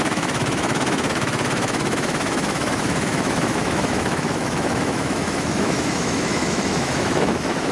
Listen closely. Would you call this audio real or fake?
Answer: fake